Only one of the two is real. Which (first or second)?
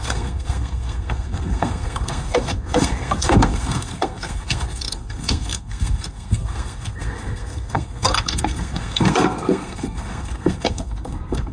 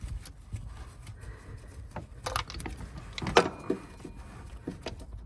second